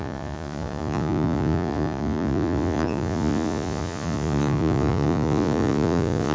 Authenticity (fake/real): fake